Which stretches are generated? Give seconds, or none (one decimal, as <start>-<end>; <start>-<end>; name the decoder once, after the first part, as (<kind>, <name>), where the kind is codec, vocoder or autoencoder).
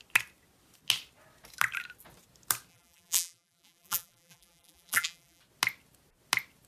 2.7-5.4 (vocoder, BigVGAN v2)